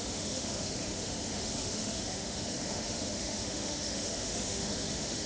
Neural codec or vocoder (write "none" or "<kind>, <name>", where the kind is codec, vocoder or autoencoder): autoencoder, DAC-VAE